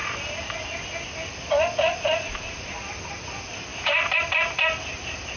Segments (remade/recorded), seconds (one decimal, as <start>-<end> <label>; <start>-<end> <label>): 0.0-5.4 recorded